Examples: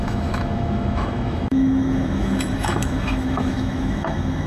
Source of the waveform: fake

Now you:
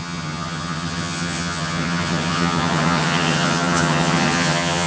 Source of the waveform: fake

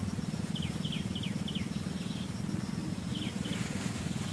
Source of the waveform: real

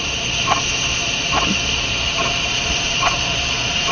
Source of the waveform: fake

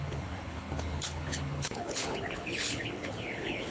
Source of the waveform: fake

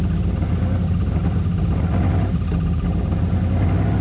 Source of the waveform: real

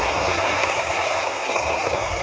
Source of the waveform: fake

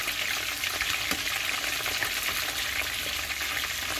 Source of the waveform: real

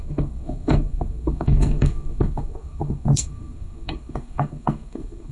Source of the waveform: fake